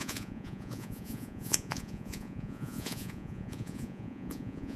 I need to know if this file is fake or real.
fake